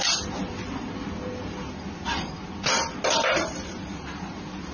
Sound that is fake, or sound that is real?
real